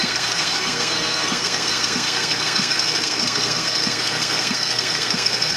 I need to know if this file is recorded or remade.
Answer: remade